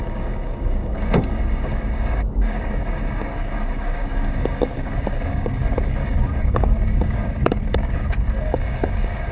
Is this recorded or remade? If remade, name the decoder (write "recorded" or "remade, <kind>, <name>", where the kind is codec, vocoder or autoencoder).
remade, codec, DAC